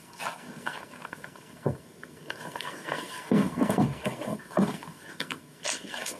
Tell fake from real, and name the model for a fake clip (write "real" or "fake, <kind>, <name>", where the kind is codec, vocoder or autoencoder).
fake, codec, SNAC